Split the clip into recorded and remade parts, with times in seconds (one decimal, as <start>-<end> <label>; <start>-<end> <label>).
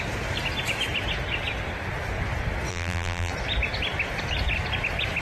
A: 0.0-2.7 recorded; 2.7-3.3 remade; 3.3-5.2 recorded